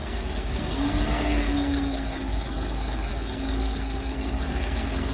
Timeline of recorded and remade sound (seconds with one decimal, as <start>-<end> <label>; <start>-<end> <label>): 0.0-5.1 remade

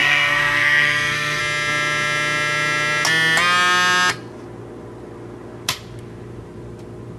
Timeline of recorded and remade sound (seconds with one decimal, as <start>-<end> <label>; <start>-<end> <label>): 0.0-1.4 remade; 1.4-7.2 recorded

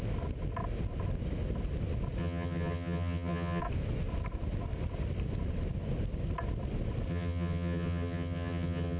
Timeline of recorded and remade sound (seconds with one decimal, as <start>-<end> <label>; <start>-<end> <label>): 0.0-2.2 recorded; 2.2-3.6 remade; 3.6-7.1 recorded; 7.1-9.0 remade

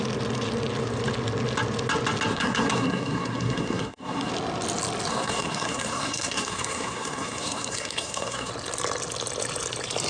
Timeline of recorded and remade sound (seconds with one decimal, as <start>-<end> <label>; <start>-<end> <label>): 0.0-2.3 recorded; 2.3-4.3 remade; 4.3-5.1 recorded; 5.1-8.5 remade; 8.5-10.1 recorded